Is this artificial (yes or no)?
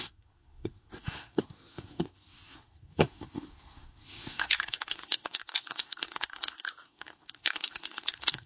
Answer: yes